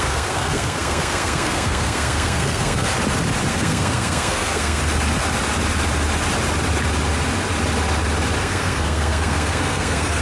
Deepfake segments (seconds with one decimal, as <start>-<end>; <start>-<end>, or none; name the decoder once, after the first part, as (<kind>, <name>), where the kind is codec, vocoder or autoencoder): 0.0-2.9 (codec, SNAC); 3.5-4.8; 8.4-10.2